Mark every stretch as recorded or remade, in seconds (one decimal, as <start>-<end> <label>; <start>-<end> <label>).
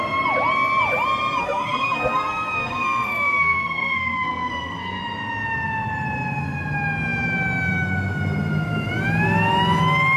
0.0-1.4 recorded; 1.4-5.0 remade; 5.0-10.2 recorded